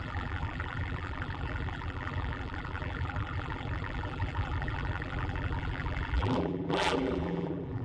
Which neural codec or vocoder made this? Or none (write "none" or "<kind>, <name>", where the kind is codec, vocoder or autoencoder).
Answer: vocoder, BigVGAN v2